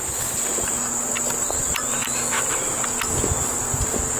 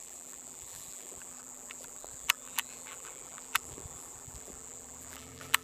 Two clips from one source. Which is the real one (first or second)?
first